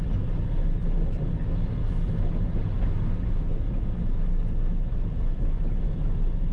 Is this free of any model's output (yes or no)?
yes